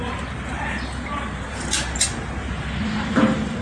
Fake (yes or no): no